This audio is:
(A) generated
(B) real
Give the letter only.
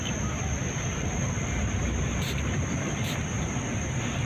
B